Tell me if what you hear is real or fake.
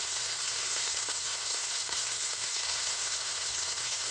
fake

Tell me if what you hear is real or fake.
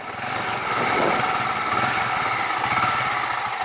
real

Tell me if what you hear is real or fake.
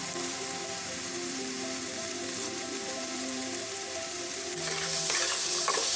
fake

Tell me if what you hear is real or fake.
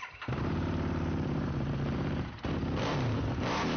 fake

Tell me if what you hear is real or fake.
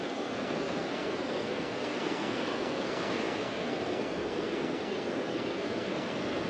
fake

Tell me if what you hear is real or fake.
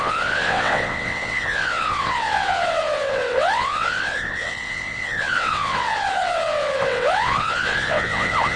fake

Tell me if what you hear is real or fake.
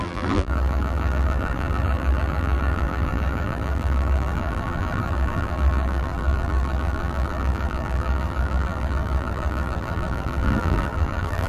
fake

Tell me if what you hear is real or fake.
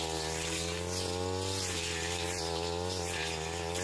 real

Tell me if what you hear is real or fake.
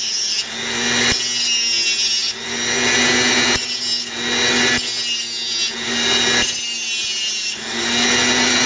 real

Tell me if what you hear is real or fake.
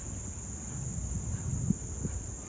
real